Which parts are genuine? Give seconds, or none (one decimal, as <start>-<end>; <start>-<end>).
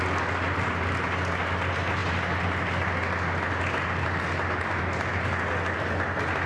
0.0-6.5